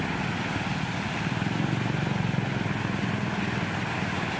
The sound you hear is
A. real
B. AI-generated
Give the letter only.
A